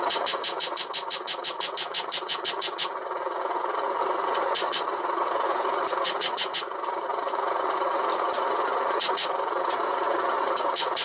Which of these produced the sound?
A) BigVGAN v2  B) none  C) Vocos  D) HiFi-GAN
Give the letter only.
C